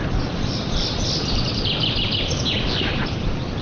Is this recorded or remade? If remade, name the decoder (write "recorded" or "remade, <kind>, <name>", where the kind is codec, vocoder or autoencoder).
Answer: recorded